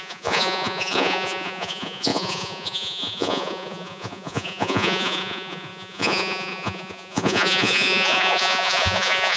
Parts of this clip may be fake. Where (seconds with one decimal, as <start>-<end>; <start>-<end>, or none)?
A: 0.0-9.4